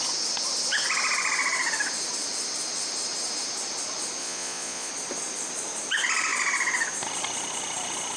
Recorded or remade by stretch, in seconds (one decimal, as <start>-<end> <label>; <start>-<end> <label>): 0.0-4.2 recorded; 4.2-4.9 remade; 4.9-8.2 recorded